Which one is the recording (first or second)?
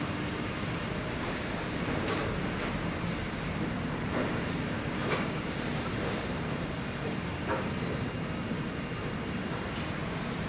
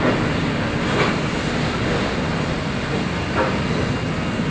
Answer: second